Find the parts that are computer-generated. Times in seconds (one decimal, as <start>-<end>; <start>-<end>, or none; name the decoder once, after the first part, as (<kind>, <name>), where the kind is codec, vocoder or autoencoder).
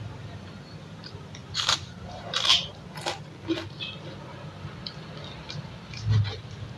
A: 0.0-2.5 (vocoder, BigVGAN v2)